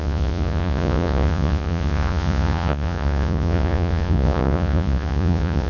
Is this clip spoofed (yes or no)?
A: yes